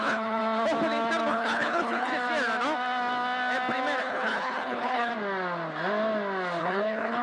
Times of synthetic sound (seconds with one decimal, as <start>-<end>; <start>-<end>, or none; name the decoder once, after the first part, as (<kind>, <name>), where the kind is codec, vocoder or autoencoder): 0.0-0.4 (codec, HILCodec); 1.3-2.1; 4.0-5.1; 6.6-7.2